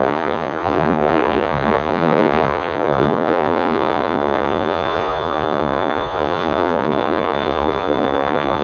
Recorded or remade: remade